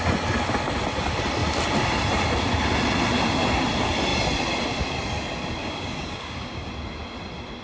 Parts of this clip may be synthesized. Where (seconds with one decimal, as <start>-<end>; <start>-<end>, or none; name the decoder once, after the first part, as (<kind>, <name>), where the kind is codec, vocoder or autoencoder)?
5.6-6.7 (codec, DAC)